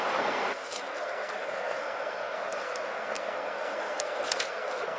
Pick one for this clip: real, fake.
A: fake